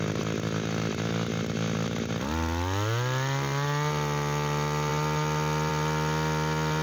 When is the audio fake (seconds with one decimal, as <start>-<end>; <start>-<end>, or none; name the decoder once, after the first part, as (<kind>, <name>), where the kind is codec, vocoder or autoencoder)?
none